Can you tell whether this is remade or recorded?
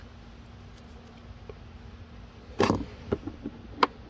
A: recorded